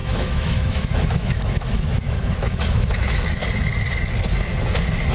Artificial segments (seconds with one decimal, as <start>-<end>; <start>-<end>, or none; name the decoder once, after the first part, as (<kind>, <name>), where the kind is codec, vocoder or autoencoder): 0.0-3.4 (autoencoder, DAC-VAE)